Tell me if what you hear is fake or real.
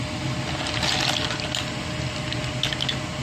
real